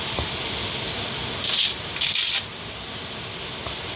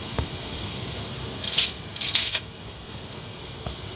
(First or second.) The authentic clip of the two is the first